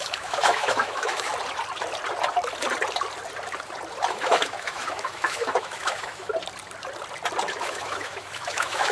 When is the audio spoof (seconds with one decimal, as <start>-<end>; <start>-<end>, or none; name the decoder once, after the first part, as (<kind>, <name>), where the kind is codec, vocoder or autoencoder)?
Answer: 0.0-1.3 (autoencoder, DAC-VAE); 4.1-6.3; 7.5-8.9